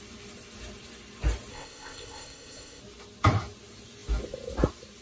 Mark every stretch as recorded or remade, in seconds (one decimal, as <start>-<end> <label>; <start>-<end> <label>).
0.0-1.5 recorded; 1.5-2.8 remade; 2.8-5.0 recorded